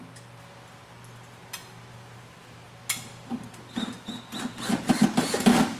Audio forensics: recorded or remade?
recorded